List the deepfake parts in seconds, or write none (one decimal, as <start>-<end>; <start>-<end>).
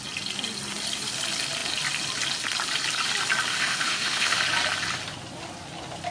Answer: 3.5-4.4